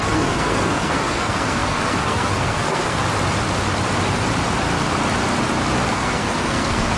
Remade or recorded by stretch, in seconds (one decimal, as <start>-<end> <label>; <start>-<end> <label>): 0.0-3.0 remade; 3.0-5.9 recorded; 5.9-7.0 remade